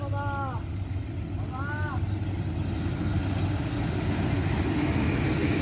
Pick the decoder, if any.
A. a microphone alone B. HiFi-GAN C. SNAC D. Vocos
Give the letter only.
A